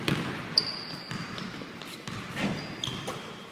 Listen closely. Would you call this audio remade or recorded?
recorded